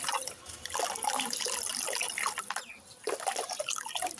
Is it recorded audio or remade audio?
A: recorded